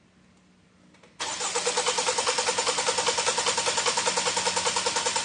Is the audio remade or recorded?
recorded